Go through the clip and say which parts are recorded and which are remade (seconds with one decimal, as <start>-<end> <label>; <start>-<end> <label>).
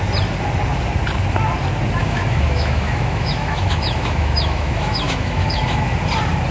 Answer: 0.0-2.0 recorded; 2.0-5.9 remade; 5.9-6.5 recorded